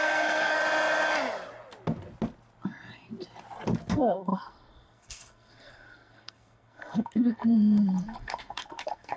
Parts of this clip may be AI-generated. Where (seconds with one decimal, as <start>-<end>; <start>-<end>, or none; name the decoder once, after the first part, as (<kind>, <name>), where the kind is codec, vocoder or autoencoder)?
0.0-0.6 (codec, SNAC); 3.9-9.2